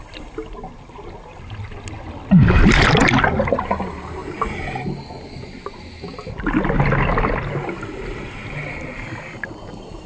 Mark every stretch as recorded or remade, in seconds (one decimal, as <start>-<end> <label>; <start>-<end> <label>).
0.0-10.1 recorded